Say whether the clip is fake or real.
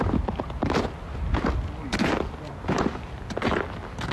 real